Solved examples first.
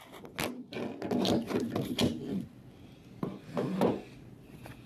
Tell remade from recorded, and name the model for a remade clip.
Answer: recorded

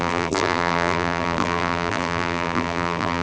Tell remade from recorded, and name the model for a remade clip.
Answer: remade, vocoder, BigVGAN v2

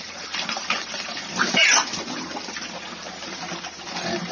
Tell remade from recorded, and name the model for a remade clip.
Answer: remade, vocoder, BigVGAN v2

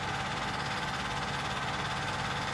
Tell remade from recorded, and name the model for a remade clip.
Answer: recorded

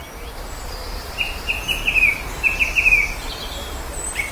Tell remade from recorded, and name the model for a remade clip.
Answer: recorded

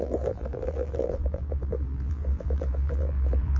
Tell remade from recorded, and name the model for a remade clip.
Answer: remade, vocoder, BigVGAN v2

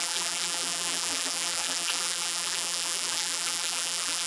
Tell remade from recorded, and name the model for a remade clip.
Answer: remade, vocoder, BigVGAN v2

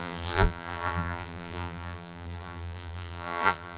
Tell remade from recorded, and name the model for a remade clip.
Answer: remade, vocoder, BigVGAN v2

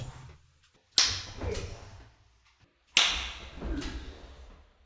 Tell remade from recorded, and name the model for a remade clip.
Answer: recorded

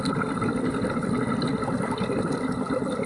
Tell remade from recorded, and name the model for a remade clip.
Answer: recorded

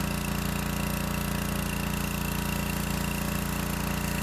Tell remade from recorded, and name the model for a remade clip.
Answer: recorded